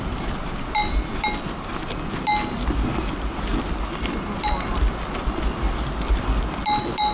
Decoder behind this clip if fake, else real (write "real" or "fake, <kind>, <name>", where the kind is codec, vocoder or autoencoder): real